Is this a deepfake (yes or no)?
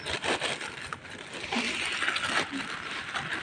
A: no